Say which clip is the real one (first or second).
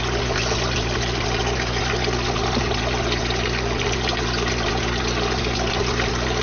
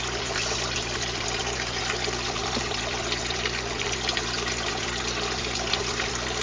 first